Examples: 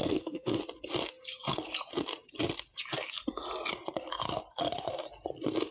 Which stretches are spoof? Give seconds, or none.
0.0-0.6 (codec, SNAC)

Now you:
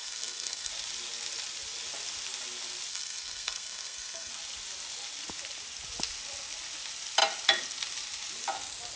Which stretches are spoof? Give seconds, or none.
0.0-0.7 (codec, SNAC); 2.9-4.3

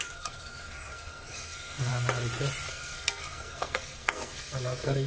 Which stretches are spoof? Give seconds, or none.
0.0-1.9 (codec, SNAC); 2.7-5.1

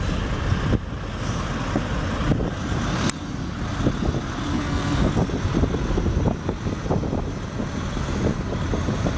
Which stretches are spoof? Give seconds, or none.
4.5-5.1 (codec, SNAC)

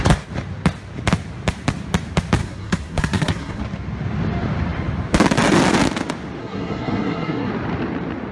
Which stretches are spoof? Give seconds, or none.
2.4-3.6 (codec, SNAC); 6.4-7.5

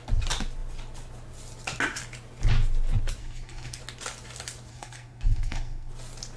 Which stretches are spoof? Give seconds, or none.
3.2-3.8 (codec, SNAC); 4.7-5.9